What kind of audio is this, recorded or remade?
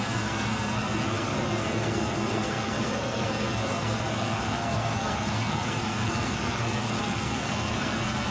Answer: remade